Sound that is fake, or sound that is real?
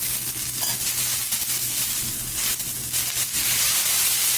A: real